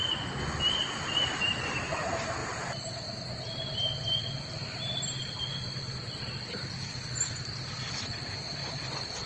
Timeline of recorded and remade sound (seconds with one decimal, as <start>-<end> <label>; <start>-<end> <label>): 0.0-9.3 recorded